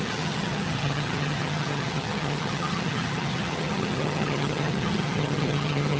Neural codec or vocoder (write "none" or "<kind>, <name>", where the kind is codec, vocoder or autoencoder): vocoder, HiFi-GAN